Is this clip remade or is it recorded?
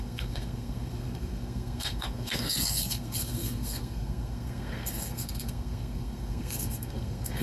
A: remade